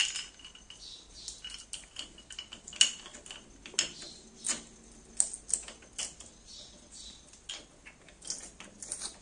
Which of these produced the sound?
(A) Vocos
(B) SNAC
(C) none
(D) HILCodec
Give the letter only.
C